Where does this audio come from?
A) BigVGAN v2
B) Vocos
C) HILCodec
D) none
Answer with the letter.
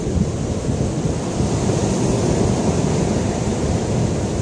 D